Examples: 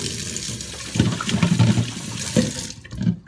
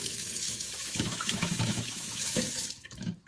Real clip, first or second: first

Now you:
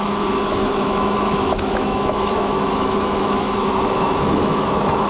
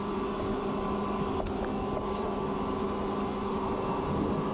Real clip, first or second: second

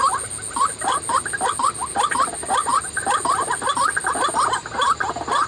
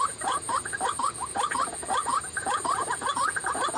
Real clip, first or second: first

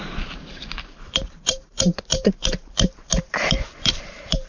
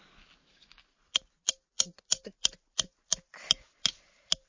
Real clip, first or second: second